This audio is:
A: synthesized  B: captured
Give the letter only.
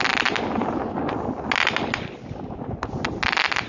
B